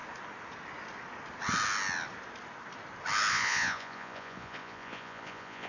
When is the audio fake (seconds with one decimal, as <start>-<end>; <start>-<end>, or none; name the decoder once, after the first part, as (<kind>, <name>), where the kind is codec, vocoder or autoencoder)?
3.3-5.7 (vocoder, Vocos)